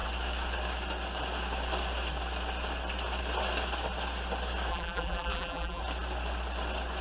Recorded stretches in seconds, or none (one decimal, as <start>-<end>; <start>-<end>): 0.0-4.7; 5.8-7.0